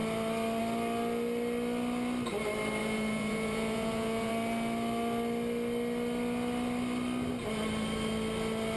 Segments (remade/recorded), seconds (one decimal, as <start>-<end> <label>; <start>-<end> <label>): 0.0-2.8 recorded; 2.8-4.3 remade; 4.3-8.8 recorded